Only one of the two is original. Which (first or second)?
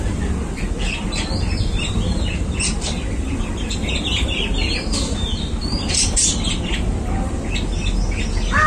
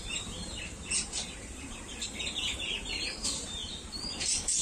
first